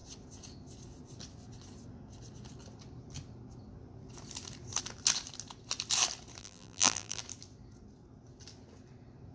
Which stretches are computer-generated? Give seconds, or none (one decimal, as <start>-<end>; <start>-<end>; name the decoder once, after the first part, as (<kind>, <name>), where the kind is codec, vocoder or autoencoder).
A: 6.4-7.2 (vocoder, BigVGAN v2)